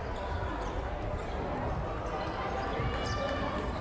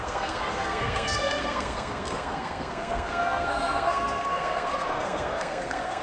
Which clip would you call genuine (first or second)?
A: first